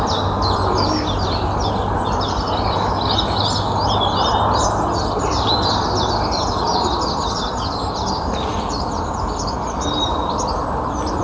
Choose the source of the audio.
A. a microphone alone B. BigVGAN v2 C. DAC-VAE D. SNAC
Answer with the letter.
A